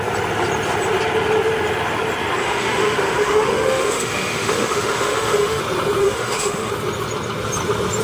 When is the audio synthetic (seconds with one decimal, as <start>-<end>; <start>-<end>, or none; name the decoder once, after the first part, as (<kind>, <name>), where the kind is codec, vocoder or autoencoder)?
2.4-5.6 (autoencoder, DAC-VAE); 6.0-6.7